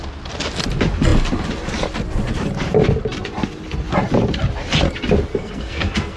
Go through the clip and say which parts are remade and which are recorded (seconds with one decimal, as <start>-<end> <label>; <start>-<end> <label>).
0.0-5.3 recorded; 5.3-6.2 remade